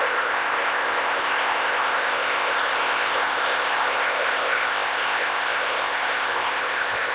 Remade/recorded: remade